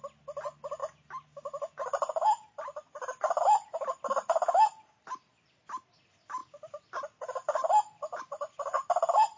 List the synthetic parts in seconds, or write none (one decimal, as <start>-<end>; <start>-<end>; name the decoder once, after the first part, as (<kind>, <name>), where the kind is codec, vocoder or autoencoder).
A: 0.0-0.8 (vocoder, BigVGAN v2); 3.4-9.4